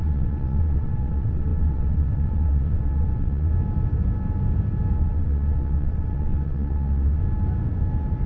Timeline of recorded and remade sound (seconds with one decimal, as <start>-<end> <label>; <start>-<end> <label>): 0.0-3.5 remade; 3.5-5.0 recorded; 5.0-7.2 remade; 7.2-8.3 recorded